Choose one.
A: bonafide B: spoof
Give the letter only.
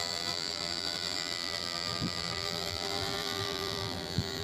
B